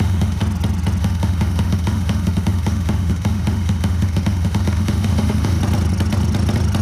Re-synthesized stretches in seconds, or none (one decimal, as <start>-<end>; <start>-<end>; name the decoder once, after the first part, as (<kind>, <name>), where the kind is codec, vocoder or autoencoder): 0.0-0.4 (autoencoder, DAC-VAE); 1.0-5.6

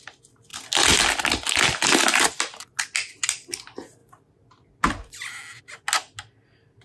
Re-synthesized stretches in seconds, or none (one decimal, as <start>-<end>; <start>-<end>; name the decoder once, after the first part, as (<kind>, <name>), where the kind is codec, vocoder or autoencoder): none